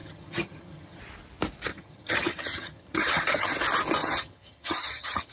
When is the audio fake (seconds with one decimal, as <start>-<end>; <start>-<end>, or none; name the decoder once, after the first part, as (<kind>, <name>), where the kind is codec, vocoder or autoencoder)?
0.0-1.0 (vocoder, HiFi-GAN); 1.7-3.5; 4.0-5.3